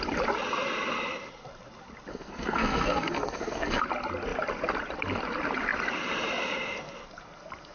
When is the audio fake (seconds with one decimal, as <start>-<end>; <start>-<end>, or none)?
2.1-3.8